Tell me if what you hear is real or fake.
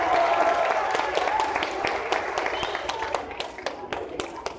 real